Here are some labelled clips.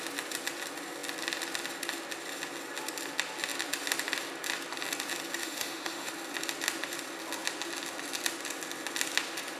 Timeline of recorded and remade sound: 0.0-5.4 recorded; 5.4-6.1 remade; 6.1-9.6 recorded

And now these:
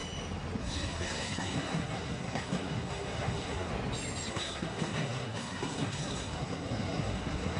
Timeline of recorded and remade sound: 0.0-0.6 recorded; 0.6-3.7 remade; 3.7-4.3 recorded; 4.3-7.6 remade